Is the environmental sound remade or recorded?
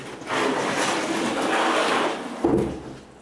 recorded